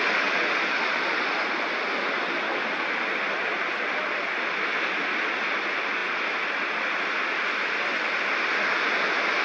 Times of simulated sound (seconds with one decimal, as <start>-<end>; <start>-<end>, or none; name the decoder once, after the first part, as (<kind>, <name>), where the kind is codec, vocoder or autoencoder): none

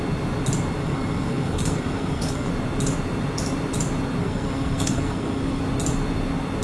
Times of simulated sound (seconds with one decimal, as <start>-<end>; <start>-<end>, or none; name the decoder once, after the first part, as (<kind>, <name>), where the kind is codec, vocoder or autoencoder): 0.8-2.5 (codec, SNAC); 4.2-5.6

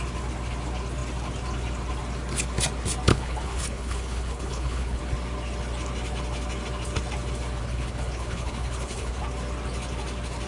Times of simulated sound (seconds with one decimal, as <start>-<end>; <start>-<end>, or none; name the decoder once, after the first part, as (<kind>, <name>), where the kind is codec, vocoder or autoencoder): 3.1-5.0 (codec, HILCodec); 7.6-9.2

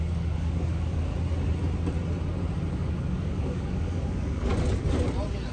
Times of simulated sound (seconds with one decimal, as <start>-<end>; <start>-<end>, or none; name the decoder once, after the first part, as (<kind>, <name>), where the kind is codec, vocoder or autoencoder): 0.0-1.1 (codec, DAC); 2.7-4.5

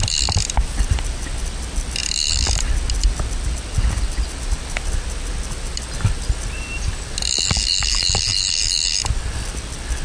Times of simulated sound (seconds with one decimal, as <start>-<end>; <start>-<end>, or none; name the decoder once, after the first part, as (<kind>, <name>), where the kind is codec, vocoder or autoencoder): none